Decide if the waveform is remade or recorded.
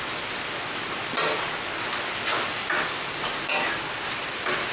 recorded